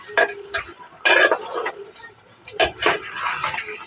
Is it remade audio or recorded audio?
recorded